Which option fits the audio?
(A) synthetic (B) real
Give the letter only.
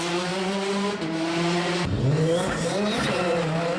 A